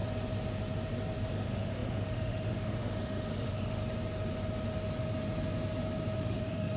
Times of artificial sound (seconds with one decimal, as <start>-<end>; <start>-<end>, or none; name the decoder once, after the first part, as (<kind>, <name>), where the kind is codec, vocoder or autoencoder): 1.3-3.8 (autoencoder, DAC-VAE); 6.2-6.8